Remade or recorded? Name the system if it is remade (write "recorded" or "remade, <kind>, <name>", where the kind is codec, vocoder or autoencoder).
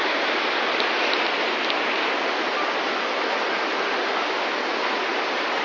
recorded